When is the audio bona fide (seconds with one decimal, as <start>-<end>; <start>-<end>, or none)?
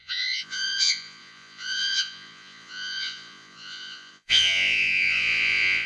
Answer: none